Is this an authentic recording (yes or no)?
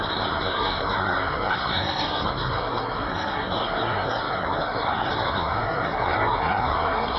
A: no